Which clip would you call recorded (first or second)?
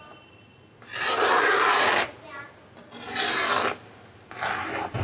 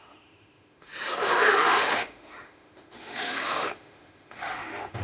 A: first